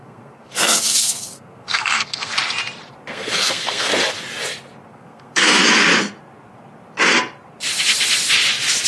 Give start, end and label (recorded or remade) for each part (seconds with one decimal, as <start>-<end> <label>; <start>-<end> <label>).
0.0-2.3 remade; 2.3-3.1 recorded; 3.1-3.9 remade; 3.9-4.9 recorded; 4.9-5.6 remade; 5.6-8.9 recorded